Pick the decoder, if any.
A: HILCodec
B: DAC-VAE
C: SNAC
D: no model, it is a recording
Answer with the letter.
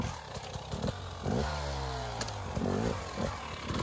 D